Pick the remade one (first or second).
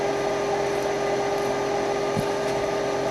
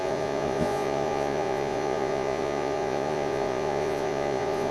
second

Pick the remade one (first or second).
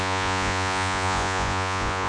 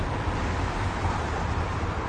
first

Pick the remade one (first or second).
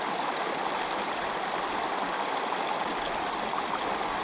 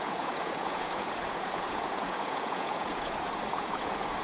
second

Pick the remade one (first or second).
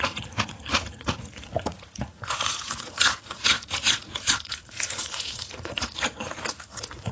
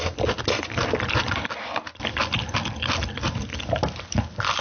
first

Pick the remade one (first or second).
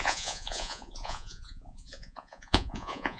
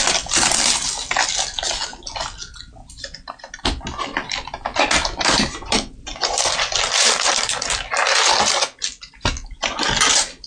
first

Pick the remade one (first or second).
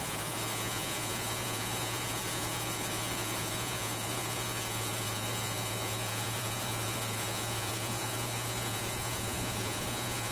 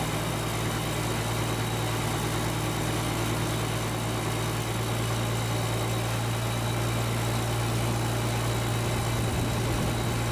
first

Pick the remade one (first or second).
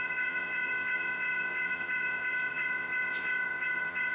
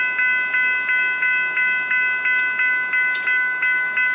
first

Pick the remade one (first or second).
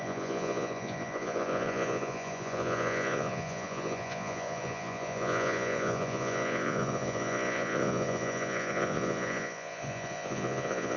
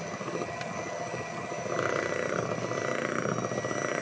first